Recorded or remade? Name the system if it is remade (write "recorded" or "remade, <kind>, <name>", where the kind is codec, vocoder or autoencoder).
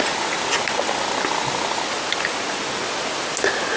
recorded